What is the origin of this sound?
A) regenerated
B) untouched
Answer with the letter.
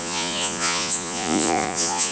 A